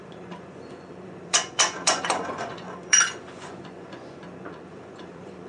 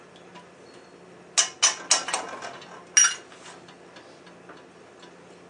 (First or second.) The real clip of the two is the second